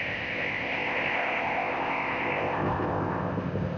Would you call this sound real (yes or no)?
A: no